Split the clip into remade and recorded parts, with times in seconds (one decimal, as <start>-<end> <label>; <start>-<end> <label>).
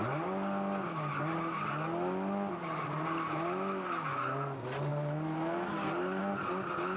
0.0-7.0 recorded